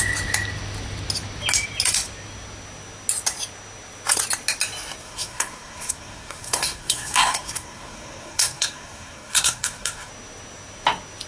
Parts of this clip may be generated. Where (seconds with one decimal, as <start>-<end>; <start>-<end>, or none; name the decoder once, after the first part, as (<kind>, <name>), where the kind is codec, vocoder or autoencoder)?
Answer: 5.0-10.1 (codec, SNAC)